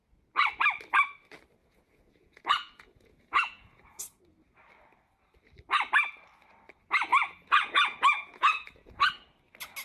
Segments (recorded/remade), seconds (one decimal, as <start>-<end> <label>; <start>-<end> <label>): 0.0-1.6 recorded; 1.6-4.0 remade; 4.0-7.1 recorded; 7.1-9.1 remade; 9.1-9.8 recorded